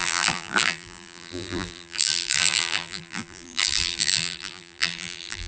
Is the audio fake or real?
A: fake